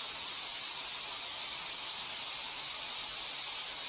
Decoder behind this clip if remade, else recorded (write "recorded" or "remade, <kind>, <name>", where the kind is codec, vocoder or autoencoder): recorded